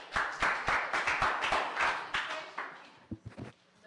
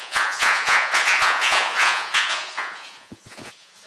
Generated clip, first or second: second